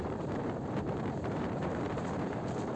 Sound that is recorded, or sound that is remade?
remade